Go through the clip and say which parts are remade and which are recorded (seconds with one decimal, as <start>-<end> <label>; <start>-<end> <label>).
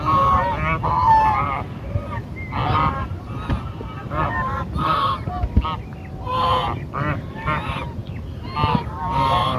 0.0-9.6 recorded